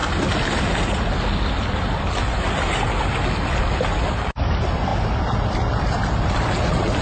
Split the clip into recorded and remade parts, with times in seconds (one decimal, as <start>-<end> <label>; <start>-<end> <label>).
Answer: 0.0-7.0 recorded